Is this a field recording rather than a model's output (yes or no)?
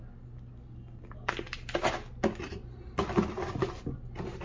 yes